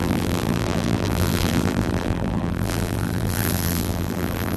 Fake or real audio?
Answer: fake